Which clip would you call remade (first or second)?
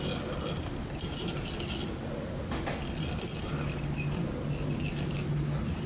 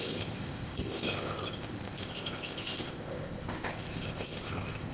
second